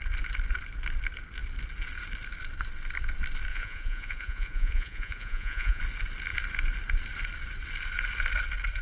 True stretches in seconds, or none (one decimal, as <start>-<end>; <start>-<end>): 0.0-3.5; 5.8-8.8